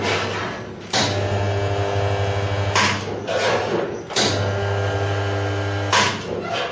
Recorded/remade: recorded